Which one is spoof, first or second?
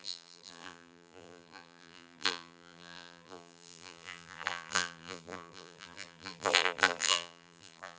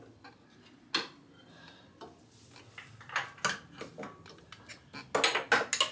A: first